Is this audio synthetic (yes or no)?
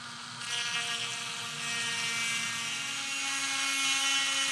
no